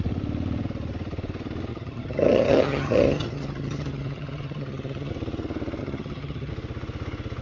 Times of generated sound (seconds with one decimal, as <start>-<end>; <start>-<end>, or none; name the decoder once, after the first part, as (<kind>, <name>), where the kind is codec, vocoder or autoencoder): 1.7-5.1 (vocoder, HiFi-GAN); 5.8-6.5